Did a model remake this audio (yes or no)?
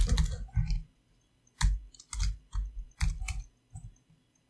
no